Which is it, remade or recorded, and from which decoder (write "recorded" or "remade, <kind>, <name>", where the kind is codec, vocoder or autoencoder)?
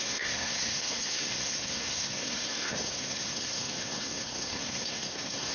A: remade, codec, SNAC